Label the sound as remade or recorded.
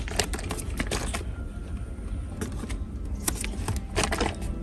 recorded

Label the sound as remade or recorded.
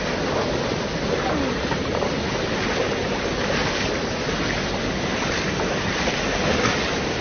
recorded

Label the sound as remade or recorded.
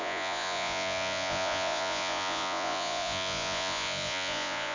remade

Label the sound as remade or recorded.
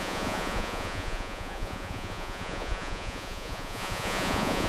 remade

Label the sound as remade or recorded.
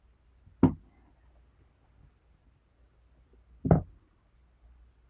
recorded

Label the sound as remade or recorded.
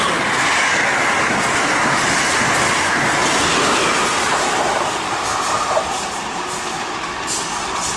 recorded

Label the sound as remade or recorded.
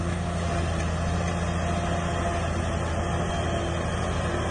recorded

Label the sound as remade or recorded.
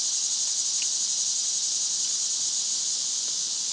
recorded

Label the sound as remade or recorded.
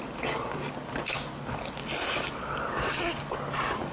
recorded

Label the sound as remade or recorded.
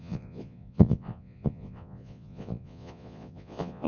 remade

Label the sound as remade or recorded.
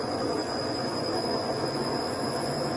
remade